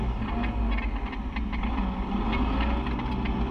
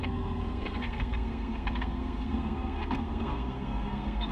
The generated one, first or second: second